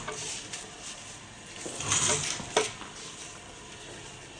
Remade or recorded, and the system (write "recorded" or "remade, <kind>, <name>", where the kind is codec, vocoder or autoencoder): recorded